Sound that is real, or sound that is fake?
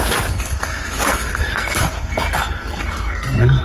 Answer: fake